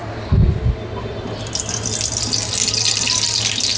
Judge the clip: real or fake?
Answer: real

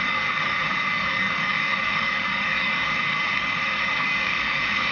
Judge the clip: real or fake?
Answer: fake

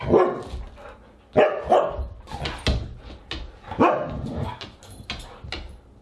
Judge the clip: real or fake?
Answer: real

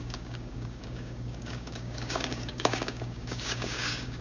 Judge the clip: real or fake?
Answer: fake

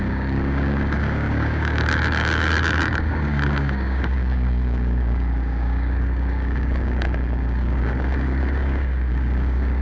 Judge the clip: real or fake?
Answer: fake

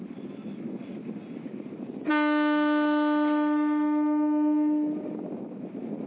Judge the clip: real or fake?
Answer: real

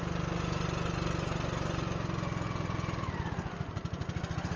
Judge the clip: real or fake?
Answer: real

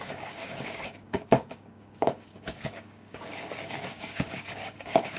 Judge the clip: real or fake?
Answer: fake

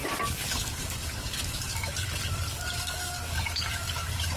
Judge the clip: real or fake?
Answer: fake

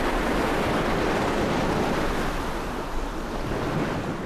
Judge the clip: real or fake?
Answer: real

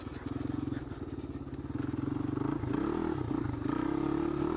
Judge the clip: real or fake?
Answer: real